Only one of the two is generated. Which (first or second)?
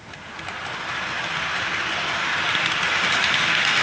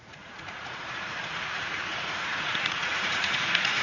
second